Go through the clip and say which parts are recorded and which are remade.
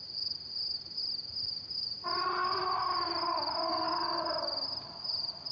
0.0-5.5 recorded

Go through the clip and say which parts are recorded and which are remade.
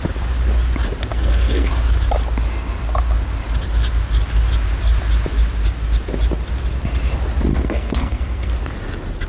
0.0-1.1 recorded; 1.1-1.7 remade; 1.7-7.5 recorded; 7.5-8.5 remade; 8.5-9.3 recorded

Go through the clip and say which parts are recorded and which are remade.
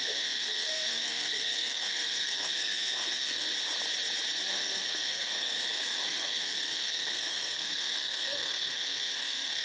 0.0-3.5 remade; 3.5-4.5 recorded; 4.5-9.6 remade